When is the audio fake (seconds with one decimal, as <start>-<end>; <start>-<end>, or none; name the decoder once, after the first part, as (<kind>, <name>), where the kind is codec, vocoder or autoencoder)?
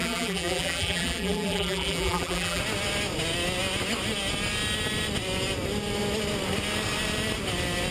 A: 0.0-2.6 (vocoder, BigVGAN v2)